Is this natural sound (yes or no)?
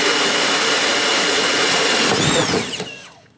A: no